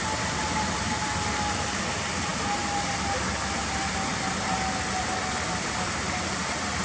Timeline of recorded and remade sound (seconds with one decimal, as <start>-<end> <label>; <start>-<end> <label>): 0.0-6.8 recorded

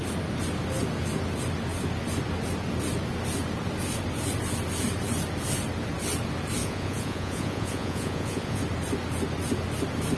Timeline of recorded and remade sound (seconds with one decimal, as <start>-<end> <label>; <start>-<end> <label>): 0.0-6.6 recorded; 6.6-8.6 remade; 8.6-10.2 recorded